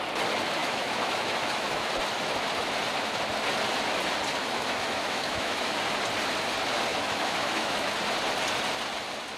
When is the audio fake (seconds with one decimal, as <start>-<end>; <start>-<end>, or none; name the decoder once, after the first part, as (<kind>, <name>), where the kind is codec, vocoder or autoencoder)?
0.6-1.9 (autoencoder, DAC-VAE); 4.4-5.8; 6.9-7.9